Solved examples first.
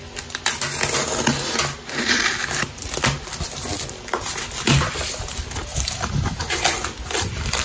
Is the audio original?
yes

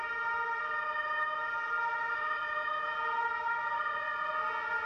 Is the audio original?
yes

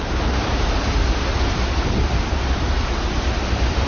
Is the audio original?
yes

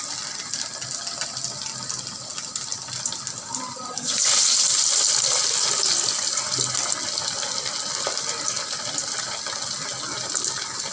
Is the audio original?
yes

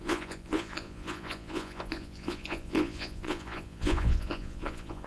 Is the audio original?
no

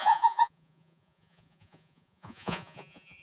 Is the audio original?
no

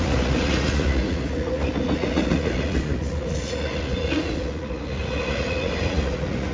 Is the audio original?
no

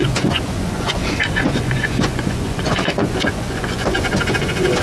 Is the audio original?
no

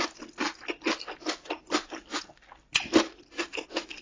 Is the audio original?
yes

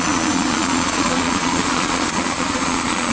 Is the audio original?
no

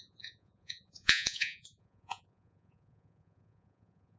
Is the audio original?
no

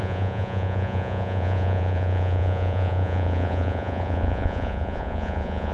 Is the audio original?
no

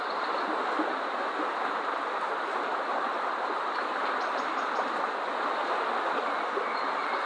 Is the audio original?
yes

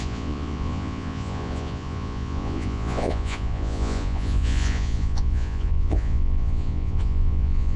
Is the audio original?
no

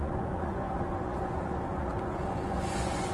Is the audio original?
no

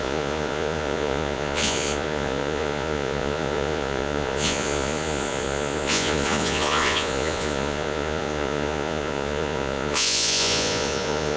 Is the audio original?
no